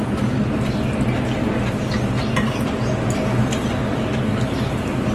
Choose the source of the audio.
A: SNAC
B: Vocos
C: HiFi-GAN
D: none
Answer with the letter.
D